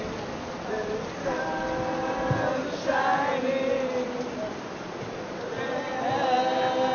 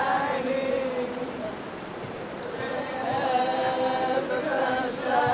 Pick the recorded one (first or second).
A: first